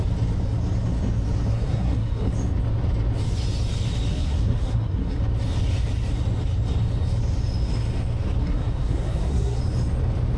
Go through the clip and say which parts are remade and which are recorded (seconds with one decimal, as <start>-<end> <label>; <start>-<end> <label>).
0.0-1.5 recorded; 1.5-2.3 remade; 2.3-4.1 recorded; 4.1-5.2 remade; 5.2-8.4 recorded; 8.4-9.6 remade; 9.6-10.4 recorded